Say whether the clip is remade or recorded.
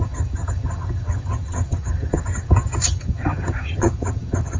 remade